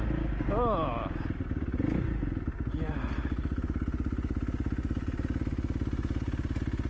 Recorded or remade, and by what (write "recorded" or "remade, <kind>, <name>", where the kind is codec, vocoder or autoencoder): recorded